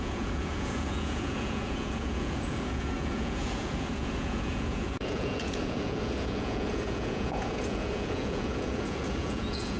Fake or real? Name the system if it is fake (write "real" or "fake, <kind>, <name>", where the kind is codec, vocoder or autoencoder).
fake, vocoder, Vocos